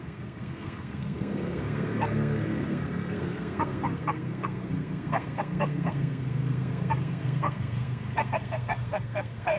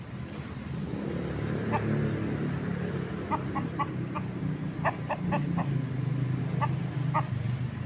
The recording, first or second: second